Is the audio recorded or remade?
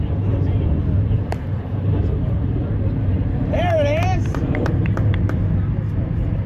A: remade